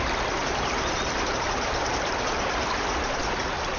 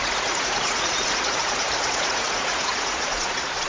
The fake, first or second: second